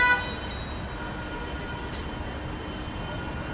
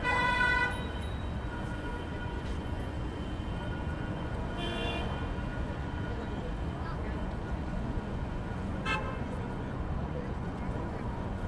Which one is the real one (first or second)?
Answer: first